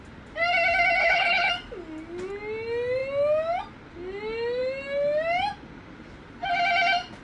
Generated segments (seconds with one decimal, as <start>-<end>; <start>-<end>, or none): 1.0-1.5